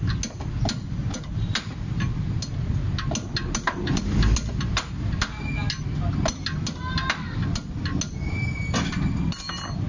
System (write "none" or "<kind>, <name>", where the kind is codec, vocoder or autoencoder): none